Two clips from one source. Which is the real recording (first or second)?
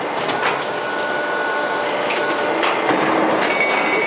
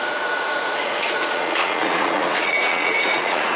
first